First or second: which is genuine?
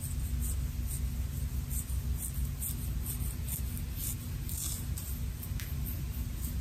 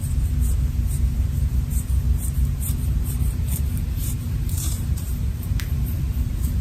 first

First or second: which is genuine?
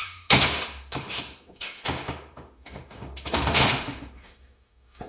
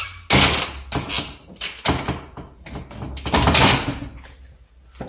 second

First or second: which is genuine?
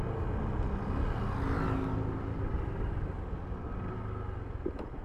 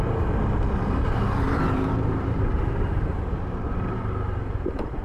first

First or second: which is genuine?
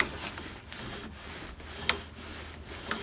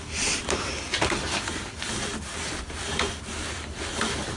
first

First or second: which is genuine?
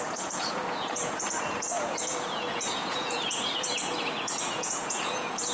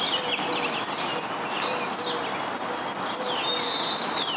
second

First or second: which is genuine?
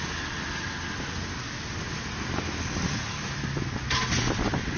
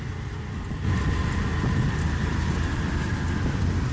first